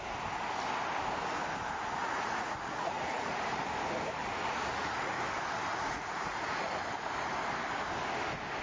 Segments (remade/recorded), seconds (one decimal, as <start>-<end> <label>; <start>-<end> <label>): 0.0-2.0 recorded; 2.0-3.6 remade; 3.6-4.2 recorded; 4.2-5.1 remade; 5.1-5.7 recorded; 5.7-6.7 remade; 6.7-8.6 recorded

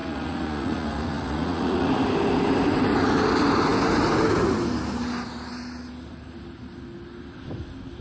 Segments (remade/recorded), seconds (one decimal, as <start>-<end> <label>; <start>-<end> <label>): 0.0-1.9 remade; 1.9-8.0 recorded